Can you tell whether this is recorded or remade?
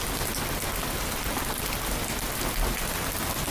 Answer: recorded